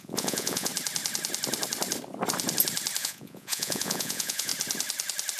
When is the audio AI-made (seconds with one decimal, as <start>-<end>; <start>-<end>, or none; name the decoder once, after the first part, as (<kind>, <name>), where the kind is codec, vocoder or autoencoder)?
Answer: 0.0-0.7 (vocoder, Vocos); 3.0-4.5